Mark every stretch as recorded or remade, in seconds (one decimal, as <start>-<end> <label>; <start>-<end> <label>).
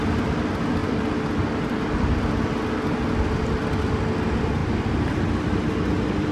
0.0-4.6 recorded; 4.6-5.7 remade; 5.7-6.3 recorded